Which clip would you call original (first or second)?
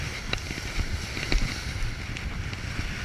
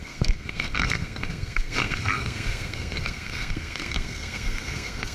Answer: first